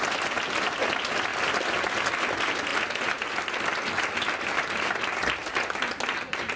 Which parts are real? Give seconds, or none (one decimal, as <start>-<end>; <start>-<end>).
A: 0.0-1.3; 2.1-6.6